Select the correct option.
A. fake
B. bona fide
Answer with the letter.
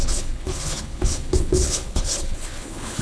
A